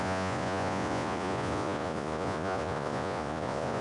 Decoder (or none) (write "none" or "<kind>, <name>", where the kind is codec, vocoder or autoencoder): vocoder, Vocos